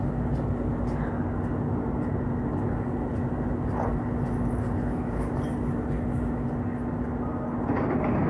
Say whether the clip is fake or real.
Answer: real